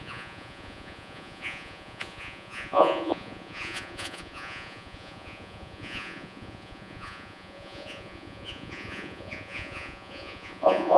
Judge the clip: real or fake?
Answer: fake